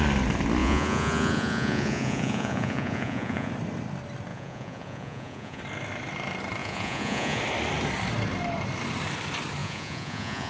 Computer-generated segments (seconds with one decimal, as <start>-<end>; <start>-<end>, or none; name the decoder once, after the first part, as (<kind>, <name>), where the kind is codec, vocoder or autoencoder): 0.6-3.5 (vocoder, Vocos); 4.3-5.6; 6.6-7.4; 9.6-10.5